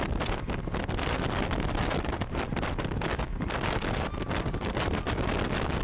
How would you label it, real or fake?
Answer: real